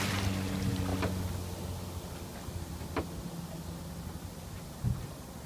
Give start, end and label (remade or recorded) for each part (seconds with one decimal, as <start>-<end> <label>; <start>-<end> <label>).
0.0-5.5 recorded